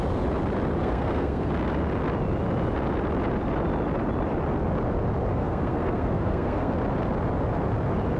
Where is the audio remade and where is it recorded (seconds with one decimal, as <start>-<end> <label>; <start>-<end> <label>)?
0.0-0.8 recorded; 0.8-1.5 remade; 1.5-5.3 recorded; 5.3-6.7 remade; 6.7-8.2 recorded